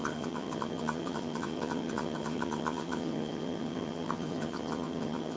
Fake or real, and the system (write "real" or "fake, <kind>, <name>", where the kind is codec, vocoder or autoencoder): fake, vocoder, HiFi-GAN